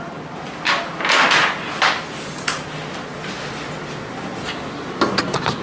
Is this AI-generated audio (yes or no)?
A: no